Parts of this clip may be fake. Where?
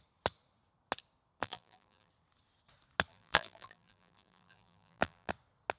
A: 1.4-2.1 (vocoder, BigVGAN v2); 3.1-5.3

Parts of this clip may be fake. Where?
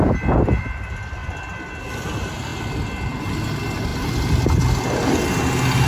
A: none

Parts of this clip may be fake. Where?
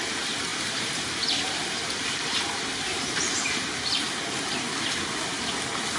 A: 0.5-4.1 (vocoder, BigVGAN v2)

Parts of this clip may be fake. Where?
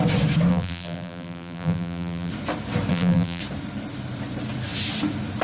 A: 0.5-2.3 (vocoder, BigVGAN v2); 2.9-3.4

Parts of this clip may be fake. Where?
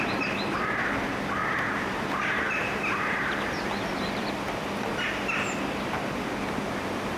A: 1.4-4.2 (vocoder, BigVGAN v2)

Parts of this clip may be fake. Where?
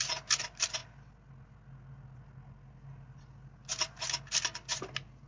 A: none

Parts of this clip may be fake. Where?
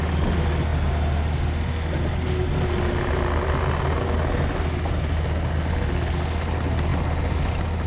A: none